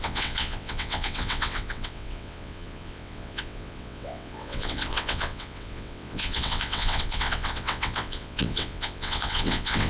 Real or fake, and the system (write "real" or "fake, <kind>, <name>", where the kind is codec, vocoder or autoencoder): fake, vocoder, WaveNeXt